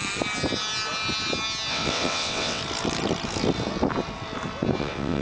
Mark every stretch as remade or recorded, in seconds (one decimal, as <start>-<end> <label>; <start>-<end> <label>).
0.0-1.7 recorded; 1.7-2.6 remade; 2.6-4.8 recorded; 4.8-5.2 remade

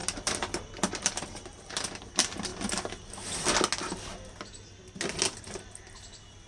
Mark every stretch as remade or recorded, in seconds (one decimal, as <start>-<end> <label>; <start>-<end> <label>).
0.0-0.6 recorded; 0.6-2.5 remade; 2.5-5.4 recorded; 5.4-6.5 remade

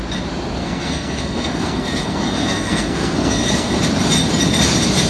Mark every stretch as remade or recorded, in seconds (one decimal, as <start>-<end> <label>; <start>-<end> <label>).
0.0-0.6 recorded; 0.6-3.7 remade; 3.7-5.1 recorded

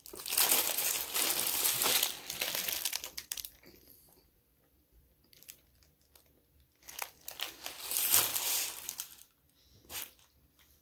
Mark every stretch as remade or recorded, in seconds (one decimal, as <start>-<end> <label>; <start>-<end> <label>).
0.0-1.8 recorded; 1.8-5.8 remade; 5.8-8.3 recorded; 8.3-9.0 remade; 9.0-10.8 recorded

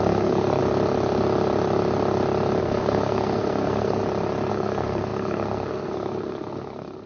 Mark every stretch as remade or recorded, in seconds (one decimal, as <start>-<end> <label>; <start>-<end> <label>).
0.0-0.6 remade; 0.6-2.6 recorded; 2.6-4.0 remade; 4.0-4.5 recorded; 4.5-7.1 remade